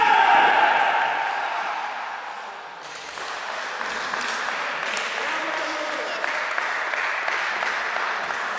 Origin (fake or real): real